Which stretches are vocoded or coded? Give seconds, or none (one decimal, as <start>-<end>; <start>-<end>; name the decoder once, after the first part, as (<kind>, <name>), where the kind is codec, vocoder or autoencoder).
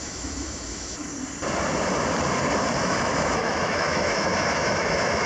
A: 0.0-1.1 (autoencoder, DAC-VAE); 2.8-5.3